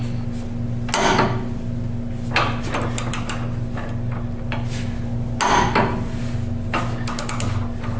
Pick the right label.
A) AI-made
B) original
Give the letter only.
B